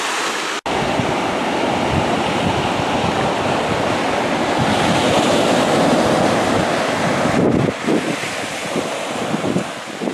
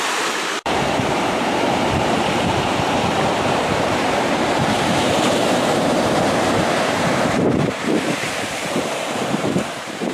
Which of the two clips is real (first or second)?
first